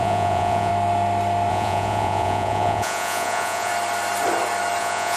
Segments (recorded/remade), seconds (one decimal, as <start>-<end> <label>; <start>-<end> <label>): 0.0-0.7 remade; 0.7-1.5 recorded; 1.5-3.7 remade; 3.7-4.8 recorded; 4.8-5.2 remade